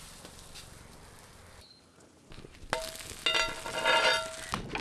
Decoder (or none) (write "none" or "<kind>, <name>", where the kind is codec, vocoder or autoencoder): none